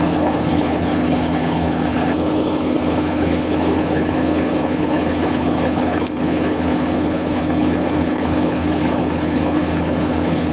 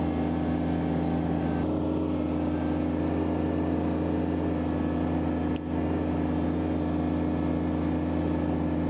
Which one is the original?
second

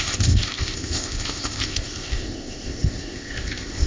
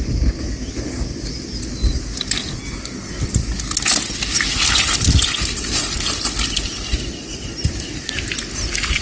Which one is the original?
second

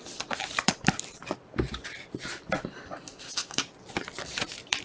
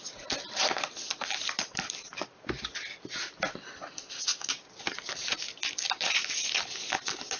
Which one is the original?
second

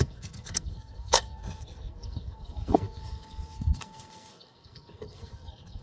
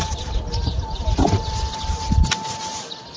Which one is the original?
second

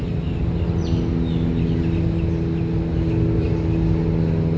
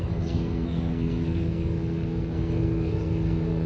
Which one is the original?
first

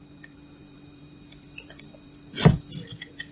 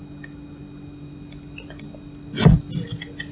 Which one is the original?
second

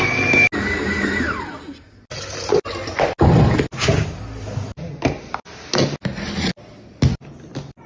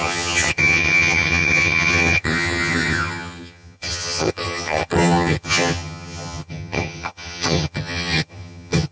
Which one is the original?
first